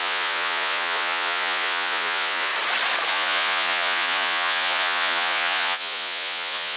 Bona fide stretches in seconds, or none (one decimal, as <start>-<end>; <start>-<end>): 2.5-3.1